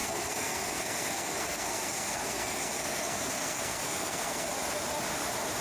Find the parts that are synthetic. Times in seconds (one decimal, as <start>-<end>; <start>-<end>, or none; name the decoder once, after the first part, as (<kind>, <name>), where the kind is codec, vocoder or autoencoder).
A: 0.0-4.5 (codec, SNAC)